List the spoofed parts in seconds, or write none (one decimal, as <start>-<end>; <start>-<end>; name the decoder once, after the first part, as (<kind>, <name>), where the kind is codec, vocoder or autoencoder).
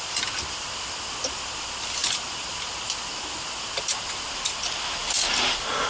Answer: none